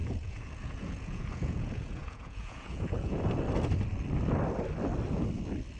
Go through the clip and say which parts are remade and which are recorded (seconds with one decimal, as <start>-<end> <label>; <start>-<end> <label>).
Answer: 0.0-3.2 remade; 3.2-5.8 recorded